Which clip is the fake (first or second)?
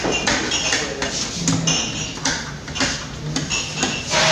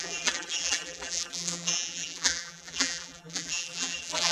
second